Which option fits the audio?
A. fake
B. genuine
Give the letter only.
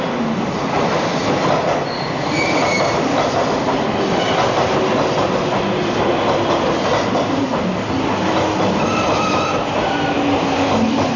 B